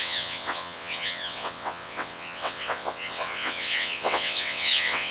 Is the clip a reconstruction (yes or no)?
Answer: yes